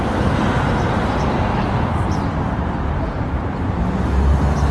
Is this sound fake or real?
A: real